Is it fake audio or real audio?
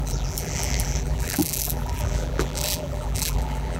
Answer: fake